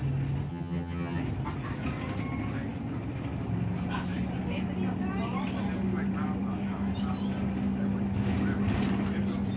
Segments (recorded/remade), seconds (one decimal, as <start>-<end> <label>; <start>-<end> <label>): 0.0-0.5 recorded; 0.5-1.2 remade; 1.2-9.6 recorded